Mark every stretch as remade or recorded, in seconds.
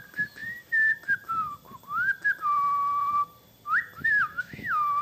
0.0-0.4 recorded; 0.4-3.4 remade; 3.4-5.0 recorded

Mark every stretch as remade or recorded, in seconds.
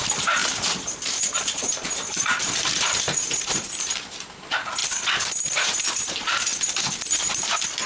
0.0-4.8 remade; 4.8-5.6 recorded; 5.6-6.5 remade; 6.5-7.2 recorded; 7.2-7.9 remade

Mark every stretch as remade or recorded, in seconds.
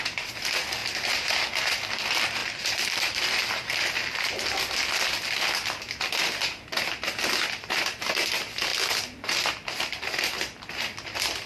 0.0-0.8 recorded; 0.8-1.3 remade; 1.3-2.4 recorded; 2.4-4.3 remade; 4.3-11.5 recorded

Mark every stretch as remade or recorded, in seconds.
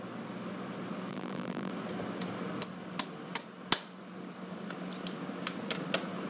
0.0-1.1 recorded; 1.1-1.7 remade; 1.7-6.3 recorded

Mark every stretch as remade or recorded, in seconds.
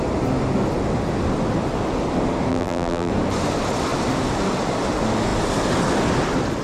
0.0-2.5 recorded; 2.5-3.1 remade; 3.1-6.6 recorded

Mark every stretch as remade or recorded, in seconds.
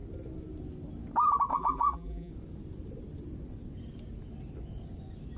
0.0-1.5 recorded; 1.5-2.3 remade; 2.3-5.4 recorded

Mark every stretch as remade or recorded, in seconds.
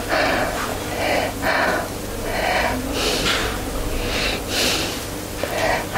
0.0-3.4 recorded; 3.4-4.0 remade; 4.0-6.0 recorded